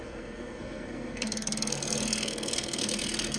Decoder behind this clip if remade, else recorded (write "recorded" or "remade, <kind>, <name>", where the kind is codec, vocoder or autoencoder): remade, codec, SNAC